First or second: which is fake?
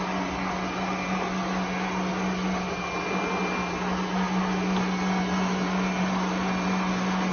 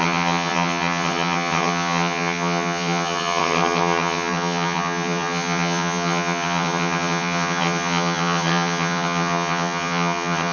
second